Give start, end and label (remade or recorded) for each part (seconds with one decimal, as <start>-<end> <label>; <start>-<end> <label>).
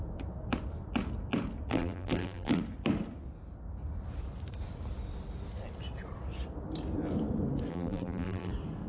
0.0-1.7 recorded; 1.7-2.6 remade; 2.6-7.7 recorded; 7.7-8.5 remade; 8.5-8.9 recorded